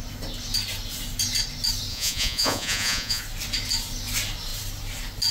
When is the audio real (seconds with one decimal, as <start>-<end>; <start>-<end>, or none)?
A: 0.0-1.9; 3.2-5.3